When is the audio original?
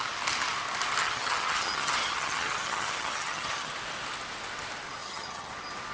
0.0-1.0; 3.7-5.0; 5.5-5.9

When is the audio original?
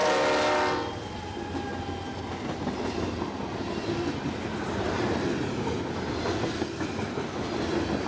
0.0-8.1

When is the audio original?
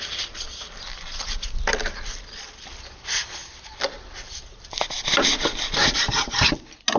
0.0-7.0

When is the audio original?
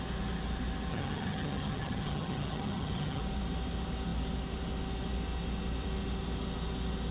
0.0-0.9; 3.2-7.1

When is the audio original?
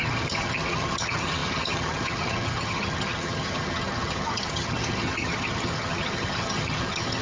none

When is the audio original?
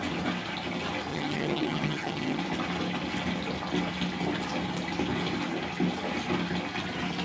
0.0-1.1; 2.4-7.2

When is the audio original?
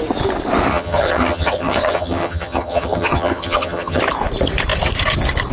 0.0-0.7; 4.0-5.5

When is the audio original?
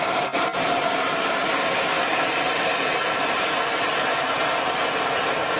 0.0-5.6